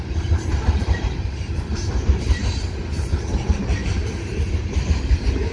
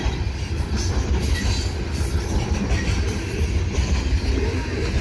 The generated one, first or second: first